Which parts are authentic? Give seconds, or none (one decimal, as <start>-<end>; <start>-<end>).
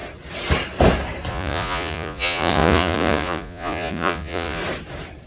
0.0-1.3; 4.6-5.3